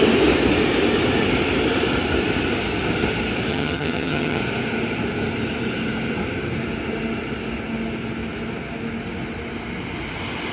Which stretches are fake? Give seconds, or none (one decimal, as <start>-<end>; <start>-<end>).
3.5-4.4